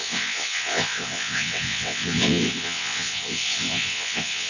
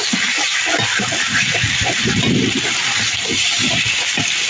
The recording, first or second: second